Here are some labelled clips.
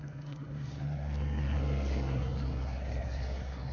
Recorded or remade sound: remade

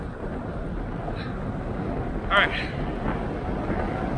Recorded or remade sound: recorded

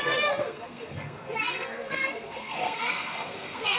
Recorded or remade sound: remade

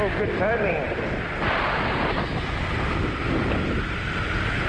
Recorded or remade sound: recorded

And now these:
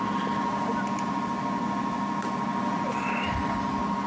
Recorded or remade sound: recorded